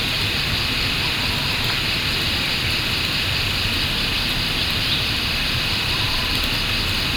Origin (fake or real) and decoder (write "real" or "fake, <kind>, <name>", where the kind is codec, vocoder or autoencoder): real